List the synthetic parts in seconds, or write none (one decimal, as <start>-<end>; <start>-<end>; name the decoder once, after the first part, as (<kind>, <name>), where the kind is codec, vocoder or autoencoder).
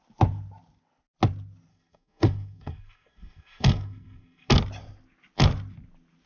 1.7-4.5 (codec, SNAC)